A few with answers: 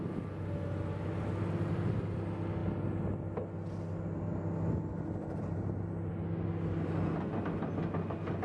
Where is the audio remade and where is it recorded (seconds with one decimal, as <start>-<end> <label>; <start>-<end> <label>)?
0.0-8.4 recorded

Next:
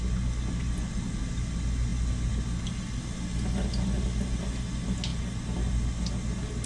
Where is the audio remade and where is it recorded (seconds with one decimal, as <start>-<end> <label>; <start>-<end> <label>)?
0.0-6.7 recorded

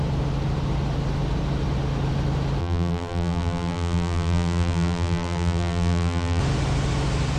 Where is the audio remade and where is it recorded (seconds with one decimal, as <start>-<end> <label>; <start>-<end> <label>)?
0.0-2.6 recorded; 2.6-6.4 remade; 6.4-7.4 recorded